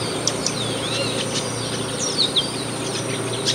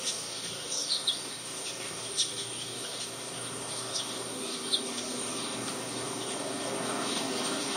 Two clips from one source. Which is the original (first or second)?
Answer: first